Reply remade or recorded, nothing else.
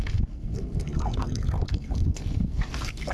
remade